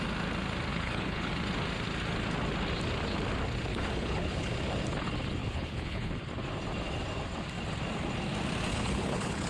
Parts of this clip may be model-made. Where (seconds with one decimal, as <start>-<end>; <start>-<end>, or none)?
0.7-1.3; 3.7-4.5; 5.4-6.1; 8.7-9.5